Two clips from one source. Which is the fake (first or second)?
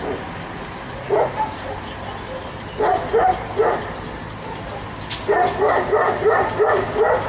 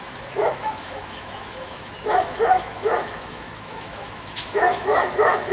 second